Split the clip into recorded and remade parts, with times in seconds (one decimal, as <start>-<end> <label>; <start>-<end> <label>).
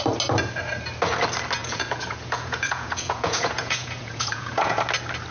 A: 0.0-1.6 recorded; 1.6-4.8 remade; 4.8-5.3 recorded